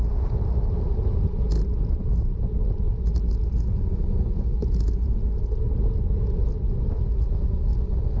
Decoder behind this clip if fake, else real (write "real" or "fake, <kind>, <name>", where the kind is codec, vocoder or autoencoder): real